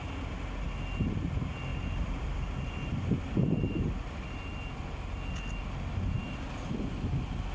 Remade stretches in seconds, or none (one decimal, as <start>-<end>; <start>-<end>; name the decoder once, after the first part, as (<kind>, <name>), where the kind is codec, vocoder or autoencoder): 1.7-2.4 (vocoder, BigVGAN v2)